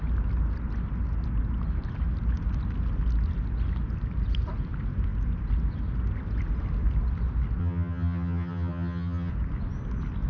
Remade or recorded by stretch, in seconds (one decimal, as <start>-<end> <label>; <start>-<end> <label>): 0.0-7.6 recorded; 7.6-9.3 remade; 9.3-10.3 recorded